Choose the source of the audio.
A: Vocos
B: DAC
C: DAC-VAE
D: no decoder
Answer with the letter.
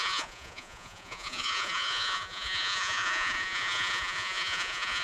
A